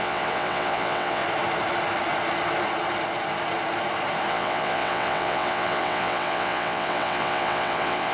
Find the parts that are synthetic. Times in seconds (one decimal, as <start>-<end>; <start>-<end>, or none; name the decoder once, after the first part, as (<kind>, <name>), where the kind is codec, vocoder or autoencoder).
0.0-1.2 (vocoder, WaveNeXt); 4.3-8.1